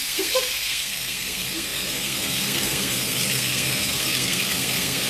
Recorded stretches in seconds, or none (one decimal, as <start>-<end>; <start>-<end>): none